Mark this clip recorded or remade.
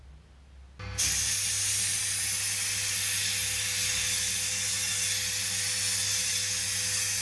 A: recorded